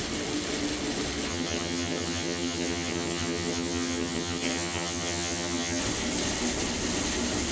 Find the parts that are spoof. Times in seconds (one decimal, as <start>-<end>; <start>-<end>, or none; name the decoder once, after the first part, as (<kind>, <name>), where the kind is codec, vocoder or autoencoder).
1.3-5.8 (vocoder, HiFi-GAN)